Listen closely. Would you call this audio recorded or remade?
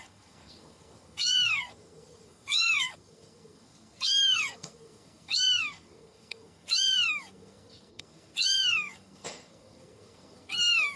remade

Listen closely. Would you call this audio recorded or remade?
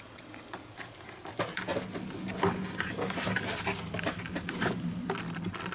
recorded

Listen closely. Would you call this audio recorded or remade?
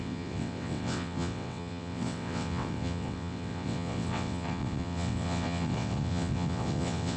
remade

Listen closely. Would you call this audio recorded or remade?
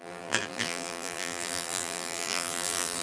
remade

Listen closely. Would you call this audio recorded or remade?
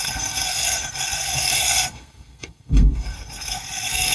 remade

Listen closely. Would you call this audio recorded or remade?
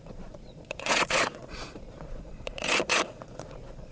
remade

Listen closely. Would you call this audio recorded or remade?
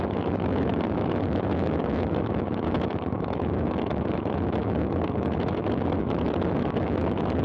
remade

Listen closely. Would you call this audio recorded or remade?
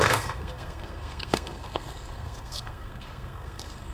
remade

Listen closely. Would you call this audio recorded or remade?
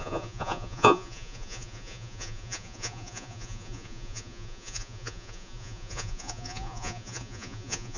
remade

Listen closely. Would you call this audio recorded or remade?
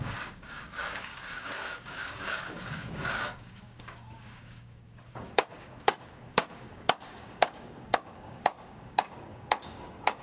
remade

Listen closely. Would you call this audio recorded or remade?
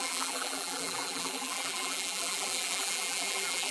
remade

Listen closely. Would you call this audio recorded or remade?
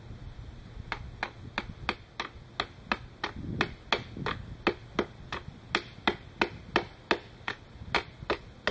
recorded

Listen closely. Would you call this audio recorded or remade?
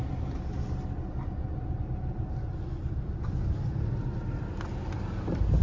recorded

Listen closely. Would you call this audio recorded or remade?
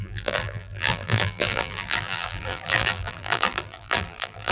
remade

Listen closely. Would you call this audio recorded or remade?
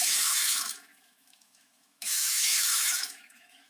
remade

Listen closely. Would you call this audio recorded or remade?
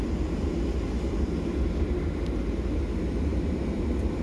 recorded